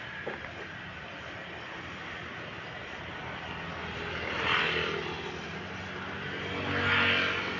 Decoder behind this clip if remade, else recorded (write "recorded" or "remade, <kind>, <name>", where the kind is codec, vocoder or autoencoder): recorded